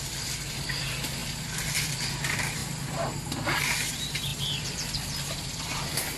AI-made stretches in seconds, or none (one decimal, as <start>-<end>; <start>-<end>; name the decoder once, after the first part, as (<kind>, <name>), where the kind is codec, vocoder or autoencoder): 1.2-2.1 (vocoder, BigVGAN v2); 4.3-5.8